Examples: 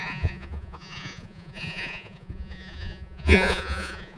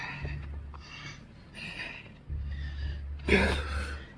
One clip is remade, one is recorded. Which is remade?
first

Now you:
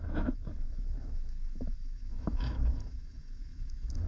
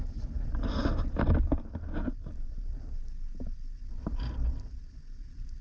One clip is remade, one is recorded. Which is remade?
first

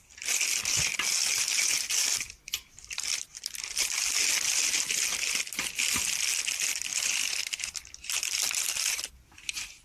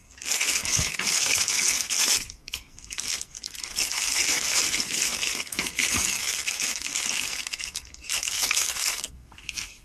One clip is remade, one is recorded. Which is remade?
second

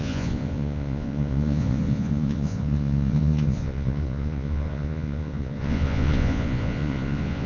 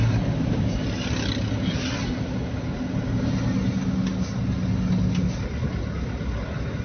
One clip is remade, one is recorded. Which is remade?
first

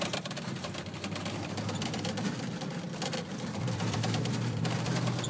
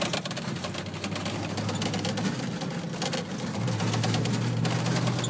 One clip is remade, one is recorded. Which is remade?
first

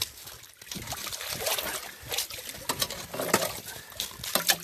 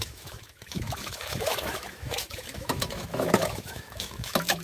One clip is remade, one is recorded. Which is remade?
second